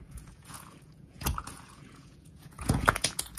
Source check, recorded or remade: remade